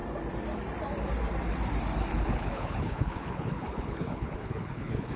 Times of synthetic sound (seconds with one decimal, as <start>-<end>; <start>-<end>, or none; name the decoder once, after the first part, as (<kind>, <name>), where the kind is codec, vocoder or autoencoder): 2.1-5.2 (codec, HILCodec)